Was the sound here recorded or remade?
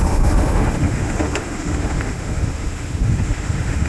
remade